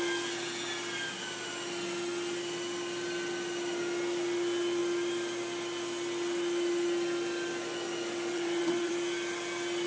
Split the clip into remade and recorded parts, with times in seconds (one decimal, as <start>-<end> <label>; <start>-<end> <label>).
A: 0.0-8.3 recorded; 8.3-8.9 remade; 8.9-9.9 recorded